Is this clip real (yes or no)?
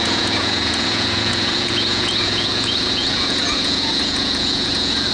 no